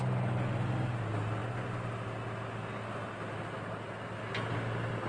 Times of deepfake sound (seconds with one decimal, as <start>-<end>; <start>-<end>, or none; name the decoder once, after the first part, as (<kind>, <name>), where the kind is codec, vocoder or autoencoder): none

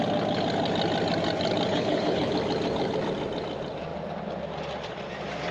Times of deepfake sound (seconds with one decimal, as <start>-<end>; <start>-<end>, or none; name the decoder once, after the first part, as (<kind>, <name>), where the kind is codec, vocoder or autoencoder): 1.7-2.3 (codec, HILCodec)

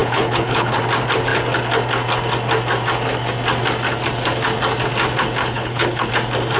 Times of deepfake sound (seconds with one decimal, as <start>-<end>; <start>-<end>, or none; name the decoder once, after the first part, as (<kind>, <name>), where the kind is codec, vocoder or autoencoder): 0.0-0.8 (codec, HILCodec); 5.4-6.1

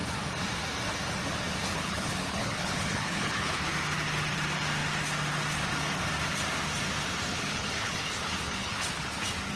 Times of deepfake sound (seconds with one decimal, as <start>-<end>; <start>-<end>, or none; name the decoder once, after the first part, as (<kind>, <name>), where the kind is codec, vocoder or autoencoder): 1.7-3.7 (codec, HILCodec); 7.3-9.2